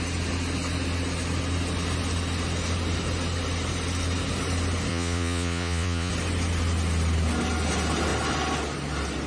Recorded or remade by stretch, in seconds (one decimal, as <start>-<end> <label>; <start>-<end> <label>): 0.0-4.9 recorded; 4.9-6.1 remade; 6.1-9.3 recorded